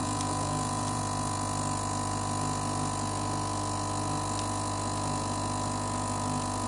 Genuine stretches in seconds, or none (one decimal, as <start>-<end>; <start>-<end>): 1.0-6.7